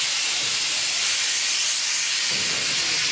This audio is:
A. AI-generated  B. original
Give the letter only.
B